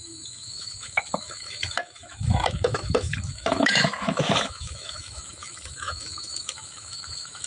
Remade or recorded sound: remade